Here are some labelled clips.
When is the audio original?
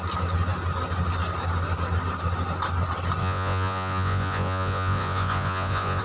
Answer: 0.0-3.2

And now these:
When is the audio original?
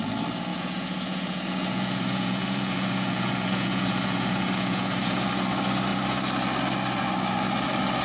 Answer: 0.0-0.5; 5.3-8.0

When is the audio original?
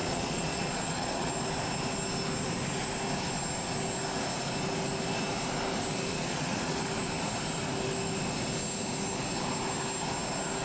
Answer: 1.3-6.1; 6.8-10.6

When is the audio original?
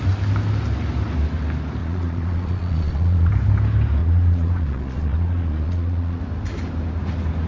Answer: 0.0-1.8; 3.3-4.0; 6.2-7.5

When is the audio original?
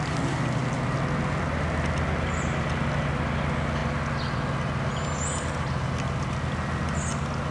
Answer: 0.0-7.5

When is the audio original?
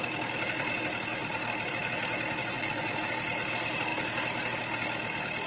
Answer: 0.0-2.4; 3.1-5.5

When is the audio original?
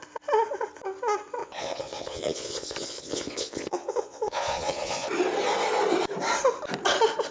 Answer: 0.0-1.4; 5.1-7.3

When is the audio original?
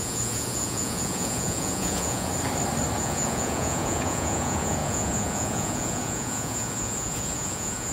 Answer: 2.3-3.0